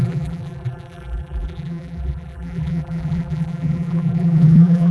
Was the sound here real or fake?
fake